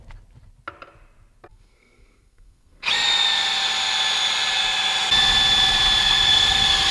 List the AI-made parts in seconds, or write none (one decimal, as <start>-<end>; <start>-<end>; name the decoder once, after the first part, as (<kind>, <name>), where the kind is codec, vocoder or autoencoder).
1.5-2.9 (codec, SNAC); 6.0-6.9